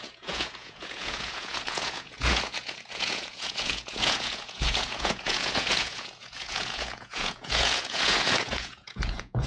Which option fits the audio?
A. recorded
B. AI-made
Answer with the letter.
B